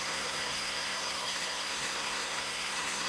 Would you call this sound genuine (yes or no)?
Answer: no